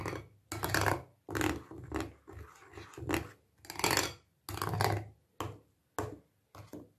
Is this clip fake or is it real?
real